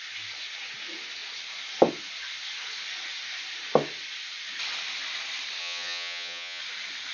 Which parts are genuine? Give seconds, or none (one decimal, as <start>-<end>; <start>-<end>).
0.0-5.6; 6.6-7.1